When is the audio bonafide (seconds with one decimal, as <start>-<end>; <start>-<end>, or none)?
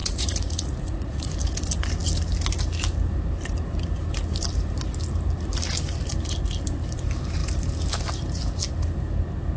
1.3-9.6